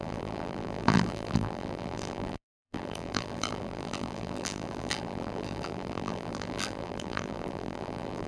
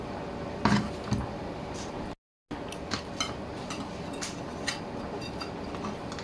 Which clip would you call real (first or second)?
second